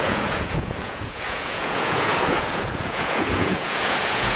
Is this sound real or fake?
fake